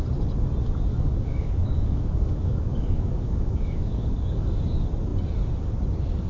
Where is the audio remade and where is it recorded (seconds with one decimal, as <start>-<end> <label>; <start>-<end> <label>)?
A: 0.0-0.9 recorded; 0.9-4.6 remade; 4.6-6.3 recorded